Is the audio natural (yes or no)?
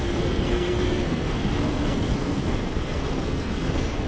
no